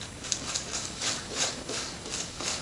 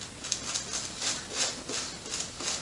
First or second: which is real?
second